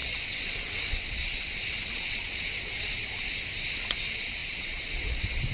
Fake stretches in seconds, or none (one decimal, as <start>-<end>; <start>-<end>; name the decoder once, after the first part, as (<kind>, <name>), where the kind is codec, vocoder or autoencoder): 0.0-3.0 (vocoder, WaveNeXt); 3.7-5.5